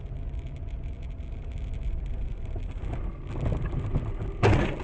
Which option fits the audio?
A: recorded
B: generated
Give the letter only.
A